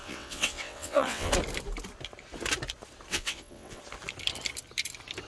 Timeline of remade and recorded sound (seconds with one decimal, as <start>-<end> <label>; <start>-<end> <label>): 0.0-1.3 remade; 1.3-3.1 recorded; 3.1-3.8 remade; 3.8-5.3 recorded